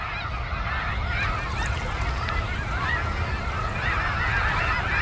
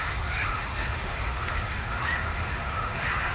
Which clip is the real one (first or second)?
first